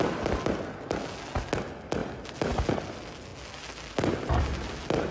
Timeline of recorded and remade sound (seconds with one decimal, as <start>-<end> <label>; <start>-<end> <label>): 0.0-5.1 recorded